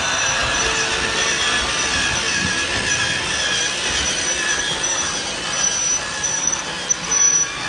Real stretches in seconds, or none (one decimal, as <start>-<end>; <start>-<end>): 0.0-7.7